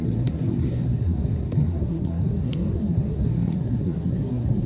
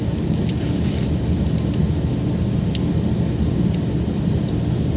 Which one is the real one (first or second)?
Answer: second